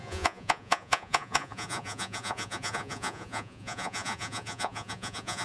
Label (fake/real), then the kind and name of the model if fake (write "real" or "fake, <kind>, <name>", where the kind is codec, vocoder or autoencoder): fake, vocoder, Vocos